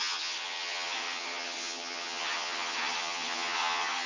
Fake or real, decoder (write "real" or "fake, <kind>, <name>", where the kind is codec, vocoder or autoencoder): fake, vocoder, HiFi-GAN